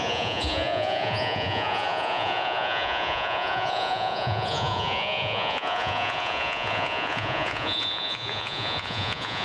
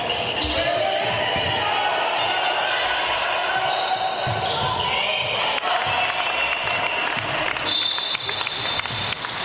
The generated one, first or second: first